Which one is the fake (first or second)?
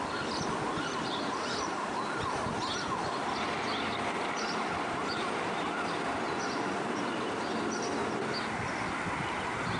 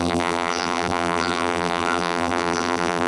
second